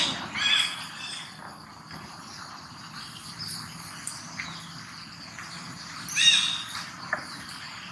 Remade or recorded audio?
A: recorded